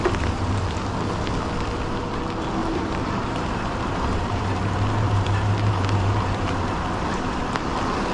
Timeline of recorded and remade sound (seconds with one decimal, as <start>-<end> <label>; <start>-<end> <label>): 0.0-2.6 recorded; 2.6-7.5 remade; 7.5-8.1 recorded